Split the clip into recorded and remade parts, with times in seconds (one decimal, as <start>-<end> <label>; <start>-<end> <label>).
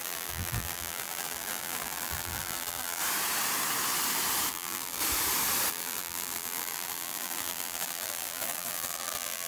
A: 0.0-3.0 remade; 3.0-4.5 recorded; 4.5-5.0 remade; 5.0-5.7 recorded; 5.7-9.5 remade